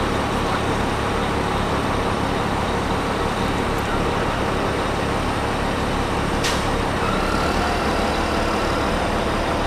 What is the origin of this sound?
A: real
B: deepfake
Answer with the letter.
B